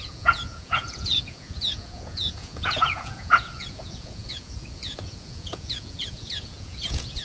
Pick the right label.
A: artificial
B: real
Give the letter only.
A